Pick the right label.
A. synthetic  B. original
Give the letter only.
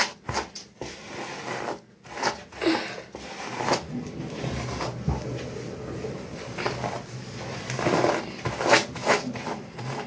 B